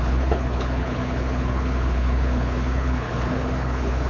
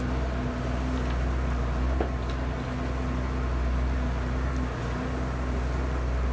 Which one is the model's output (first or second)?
first